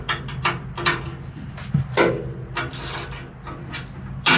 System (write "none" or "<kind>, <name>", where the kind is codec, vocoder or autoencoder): none